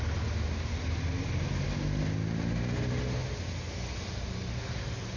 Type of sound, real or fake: real